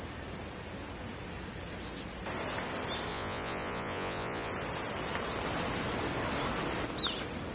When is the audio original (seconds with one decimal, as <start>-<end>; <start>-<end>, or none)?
0.0-3.1; 4.5-7.5